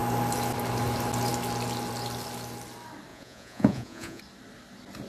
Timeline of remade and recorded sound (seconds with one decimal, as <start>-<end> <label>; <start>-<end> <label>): 0.0-3.1 recorded; 3.1-4.2 remade; 4.2-5.1 recorded